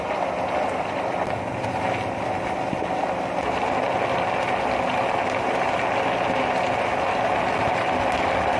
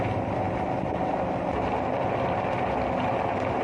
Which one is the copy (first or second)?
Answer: second